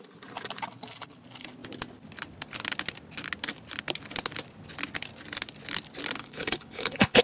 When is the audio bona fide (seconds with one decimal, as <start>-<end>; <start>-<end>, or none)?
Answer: 0.0-6.2